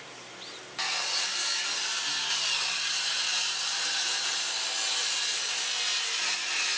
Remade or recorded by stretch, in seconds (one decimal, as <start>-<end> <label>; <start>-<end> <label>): 0.0-6.8 recorded